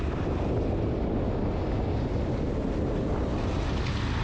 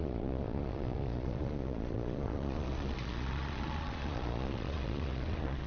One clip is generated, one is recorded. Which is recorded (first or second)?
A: first